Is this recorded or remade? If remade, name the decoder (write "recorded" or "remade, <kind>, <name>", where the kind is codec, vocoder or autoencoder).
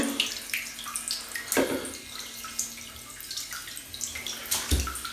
recorded